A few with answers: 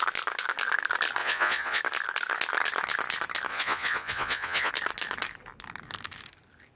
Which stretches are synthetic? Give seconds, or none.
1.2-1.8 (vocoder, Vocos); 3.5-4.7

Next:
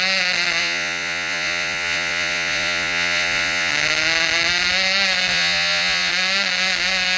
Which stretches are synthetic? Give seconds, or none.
0.6-3.7 (vocoder, Vocos); 5.3-6.1

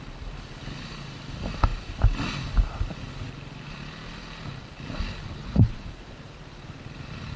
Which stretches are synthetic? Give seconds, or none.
5.4-5.9 (vocoder, Vocos)

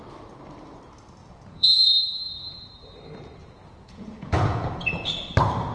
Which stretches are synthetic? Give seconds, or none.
1.2-2.6 (vocoder, Vocos); 3.4-5.1

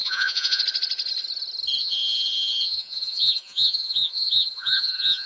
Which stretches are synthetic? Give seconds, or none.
0.0-0.6 (vocoder, Vocos); 1.8-5.3

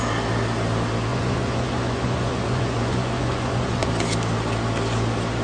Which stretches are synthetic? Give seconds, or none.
1.1-3.9 (vocoder, Vocos)